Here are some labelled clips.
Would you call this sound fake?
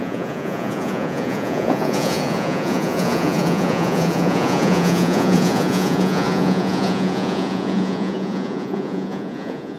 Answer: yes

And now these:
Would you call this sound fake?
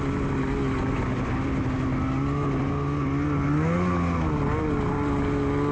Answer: no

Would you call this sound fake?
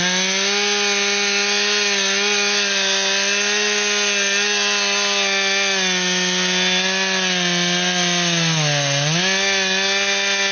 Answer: no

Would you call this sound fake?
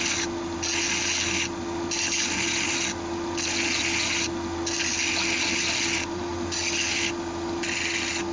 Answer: no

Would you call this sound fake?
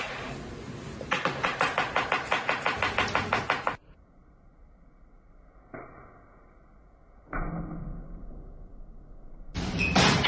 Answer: no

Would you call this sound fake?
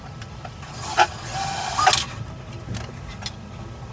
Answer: no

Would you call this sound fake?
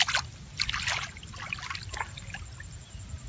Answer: no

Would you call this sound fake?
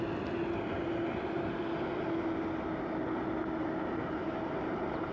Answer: no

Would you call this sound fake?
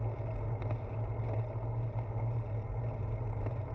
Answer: no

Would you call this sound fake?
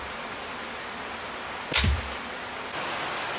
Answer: no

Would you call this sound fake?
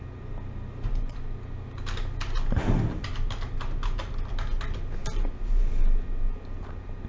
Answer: no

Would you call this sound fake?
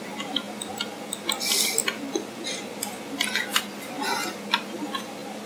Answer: no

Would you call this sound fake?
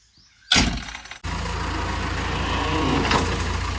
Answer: no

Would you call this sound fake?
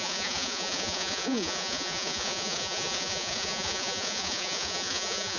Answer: yes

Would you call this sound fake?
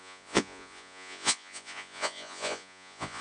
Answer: yes